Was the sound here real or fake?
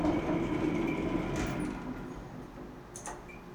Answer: real